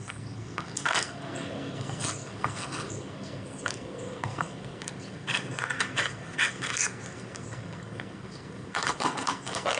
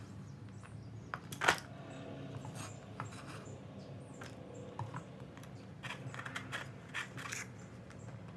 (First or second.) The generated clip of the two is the first